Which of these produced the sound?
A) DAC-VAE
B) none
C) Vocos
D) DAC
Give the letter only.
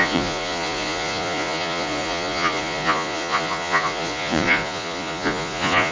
C